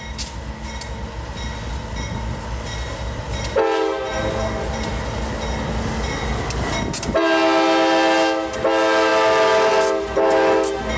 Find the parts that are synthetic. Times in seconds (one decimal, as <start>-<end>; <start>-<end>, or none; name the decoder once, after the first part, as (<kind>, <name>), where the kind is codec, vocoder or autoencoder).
none